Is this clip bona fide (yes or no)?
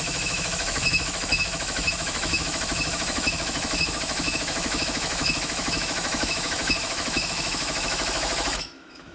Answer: no